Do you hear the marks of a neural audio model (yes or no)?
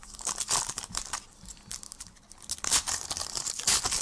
no